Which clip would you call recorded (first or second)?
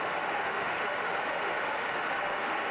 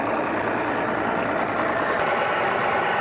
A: second